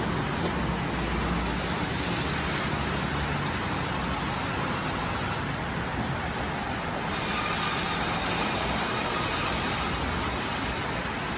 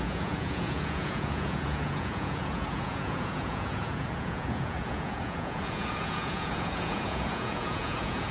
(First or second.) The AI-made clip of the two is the second